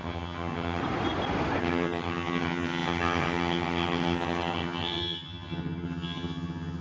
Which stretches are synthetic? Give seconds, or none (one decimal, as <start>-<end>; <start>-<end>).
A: 0.0-0.8; 1.6-6.8